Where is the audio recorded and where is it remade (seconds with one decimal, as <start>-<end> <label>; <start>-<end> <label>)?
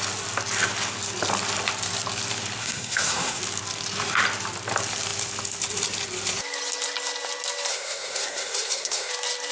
0.0-2.6 recorded; 2.6-3.4 remade; 3.4-7.7 recorded; 7.7-9.1 remade; 9.1-9.5 recorded